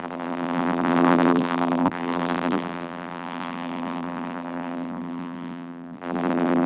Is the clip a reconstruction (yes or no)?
yes